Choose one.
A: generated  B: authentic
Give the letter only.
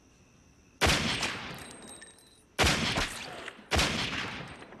B